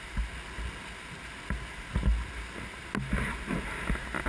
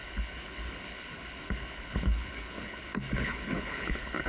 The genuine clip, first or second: first